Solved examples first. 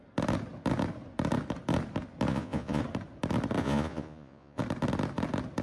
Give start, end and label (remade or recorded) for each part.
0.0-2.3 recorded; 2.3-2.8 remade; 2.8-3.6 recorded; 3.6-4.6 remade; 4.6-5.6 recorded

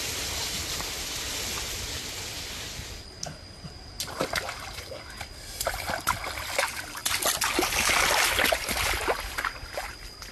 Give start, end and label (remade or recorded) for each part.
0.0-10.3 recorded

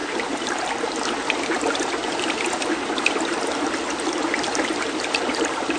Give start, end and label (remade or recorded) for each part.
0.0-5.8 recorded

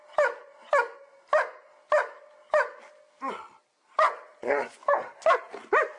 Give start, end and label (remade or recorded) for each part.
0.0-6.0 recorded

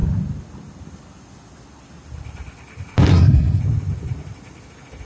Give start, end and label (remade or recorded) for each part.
0.0-3.1 recorded; 3.1-3.6 remade; 3.6-5.1 recorded